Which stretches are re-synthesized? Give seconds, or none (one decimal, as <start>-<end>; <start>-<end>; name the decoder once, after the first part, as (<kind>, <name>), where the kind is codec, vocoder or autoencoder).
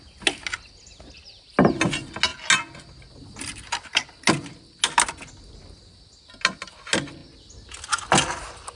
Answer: none